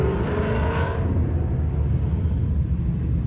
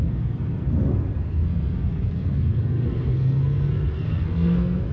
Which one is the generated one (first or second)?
second